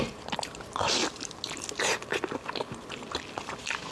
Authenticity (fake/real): real